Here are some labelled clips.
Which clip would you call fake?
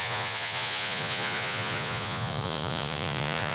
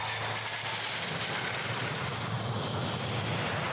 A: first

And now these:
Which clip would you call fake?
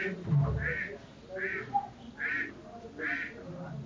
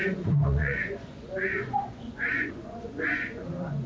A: second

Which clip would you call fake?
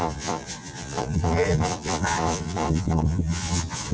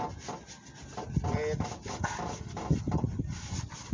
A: first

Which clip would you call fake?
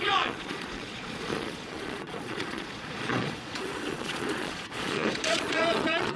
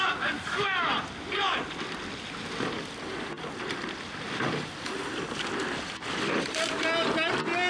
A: first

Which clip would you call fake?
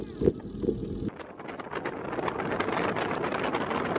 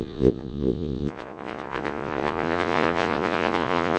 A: second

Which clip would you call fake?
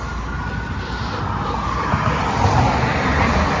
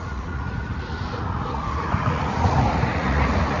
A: second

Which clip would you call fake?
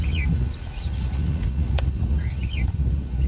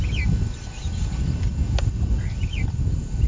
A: first